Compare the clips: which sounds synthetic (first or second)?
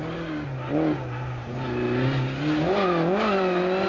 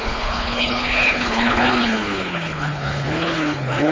second